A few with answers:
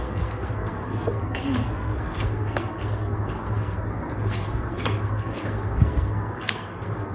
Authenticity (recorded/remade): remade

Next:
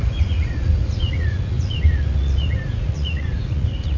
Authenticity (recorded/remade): remade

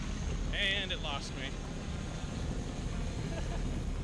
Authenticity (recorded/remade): recorded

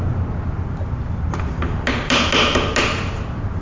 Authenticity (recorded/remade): recorded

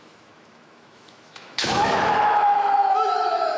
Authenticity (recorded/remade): remade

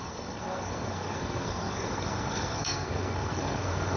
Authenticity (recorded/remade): remade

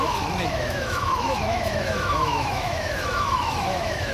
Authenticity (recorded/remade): remade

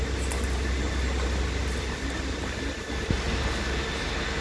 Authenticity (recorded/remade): recorded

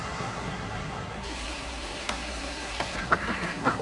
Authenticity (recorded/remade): remade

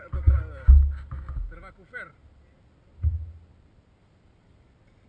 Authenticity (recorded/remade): recorded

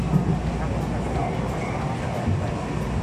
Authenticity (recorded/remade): recorded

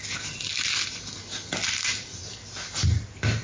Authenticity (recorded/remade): recorded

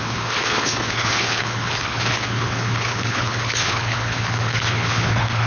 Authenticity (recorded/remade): remade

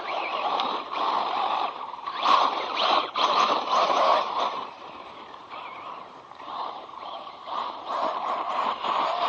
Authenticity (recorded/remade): remade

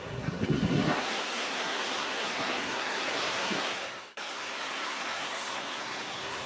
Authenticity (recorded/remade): remade